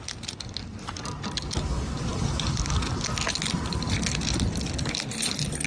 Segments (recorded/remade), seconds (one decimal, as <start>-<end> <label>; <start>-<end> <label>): 0.0-5.7 recorded